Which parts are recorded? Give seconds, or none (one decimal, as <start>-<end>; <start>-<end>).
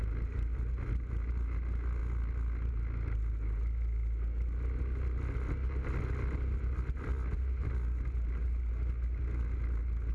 0.0-10.1